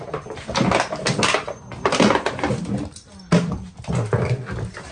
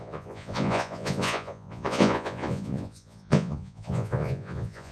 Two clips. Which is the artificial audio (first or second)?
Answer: second